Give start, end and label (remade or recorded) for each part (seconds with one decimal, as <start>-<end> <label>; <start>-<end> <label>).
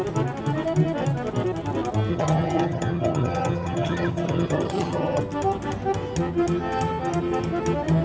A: 0.0-2.1 recorded; 2.1-5.2 remade; 5.2-8.0 recorded